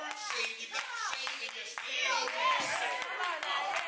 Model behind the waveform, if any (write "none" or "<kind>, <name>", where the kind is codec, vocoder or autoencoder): none